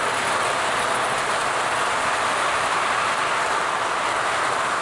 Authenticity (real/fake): real